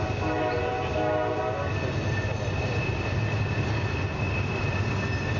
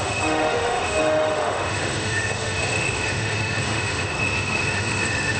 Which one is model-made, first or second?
second